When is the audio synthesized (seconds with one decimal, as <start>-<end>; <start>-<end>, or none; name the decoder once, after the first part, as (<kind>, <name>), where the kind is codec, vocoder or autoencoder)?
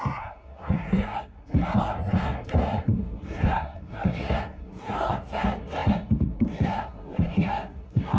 0.0-8.2 (codec, SNAC)